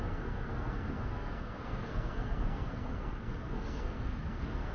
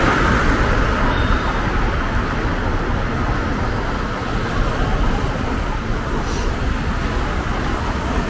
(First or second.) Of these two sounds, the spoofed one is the first